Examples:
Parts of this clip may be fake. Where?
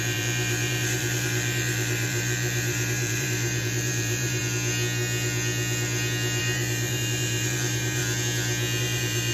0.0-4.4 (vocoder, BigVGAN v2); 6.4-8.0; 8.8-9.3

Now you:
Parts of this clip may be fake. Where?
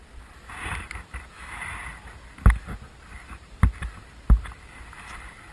none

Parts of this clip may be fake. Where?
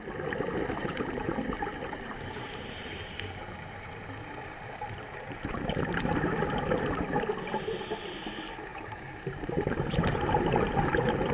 0.8-5.5 (vocoder, BigVGAN v2); 8.7-11.3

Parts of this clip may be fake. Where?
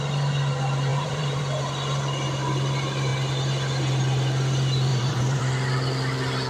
0.9-1.4 (vocoder, BigVGAN v2); 4.9-5.4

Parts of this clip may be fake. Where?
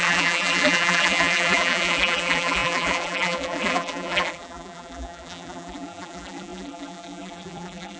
0.0-8.0 (vocoder, BigVGAN v2)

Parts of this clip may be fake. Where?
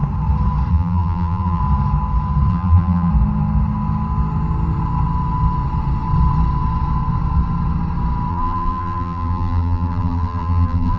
0.7-1.6 (vocoder, BigVGAN v2); 2.5-3.1; 8.3-11.0